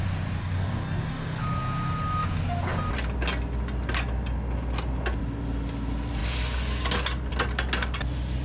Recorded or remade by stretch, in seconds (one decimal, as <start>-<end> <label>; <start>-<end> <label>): 0.0-0.4 recorded; 0.4-1.4 remade; 1.4-8.4 recorded